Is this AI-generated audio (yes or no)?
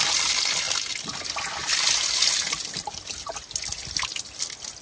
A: no